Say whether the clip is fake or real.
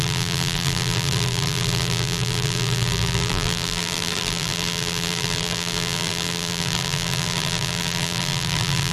fake